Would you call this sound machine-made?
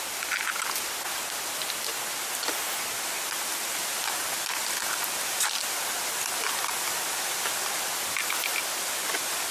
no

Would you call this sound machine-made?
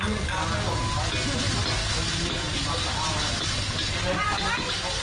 no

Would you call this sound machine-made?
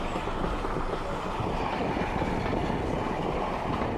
no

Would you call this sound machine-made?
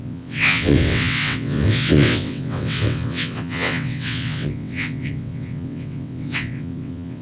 yes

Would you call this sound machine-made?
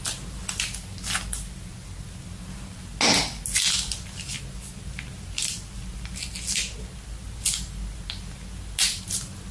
no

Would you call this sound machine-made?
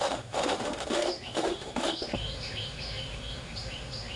yes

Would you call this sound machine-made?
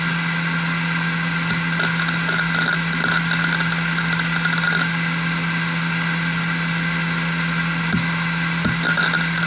no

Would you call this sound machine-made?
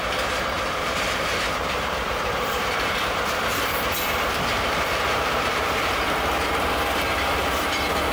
yes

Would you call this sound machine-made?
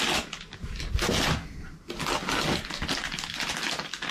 no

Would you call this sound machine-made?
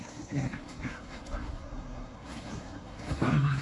yes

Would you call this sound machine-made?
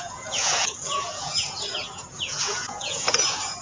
yes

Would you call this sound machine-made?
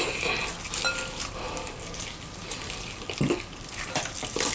no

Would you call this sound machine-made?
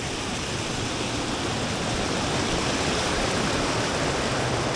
no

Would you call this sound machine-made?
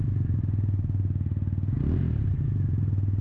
no